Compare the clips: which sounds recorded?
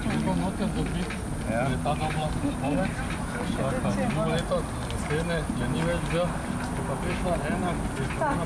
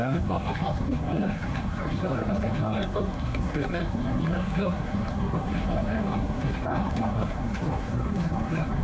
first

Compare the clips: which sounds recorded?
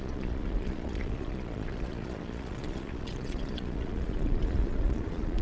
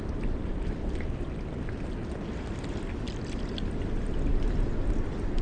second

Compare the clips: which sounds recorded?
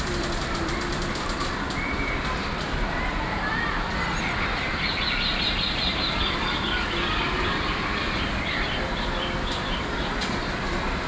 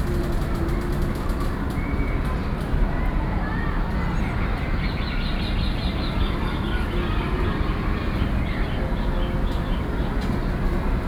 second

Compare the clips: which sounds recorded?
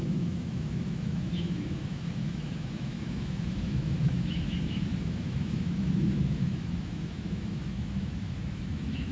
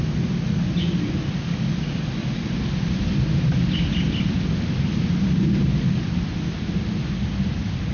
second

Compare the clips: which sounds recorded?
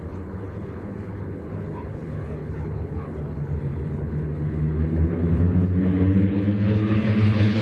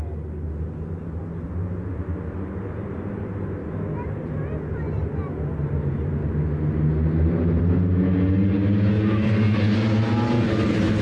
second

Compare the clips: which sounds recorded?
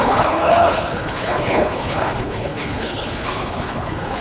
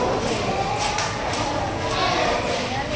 second